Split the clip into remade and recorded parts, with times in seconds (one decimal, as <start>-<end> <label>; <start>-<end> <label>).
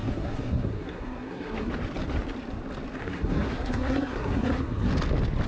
0.0-1.7 remade; 1.7-3.0 recorded; 3.0-4.9 remade; 4.9-5.5 recorded